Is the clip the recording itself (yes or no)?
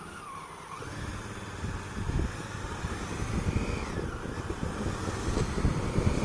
yes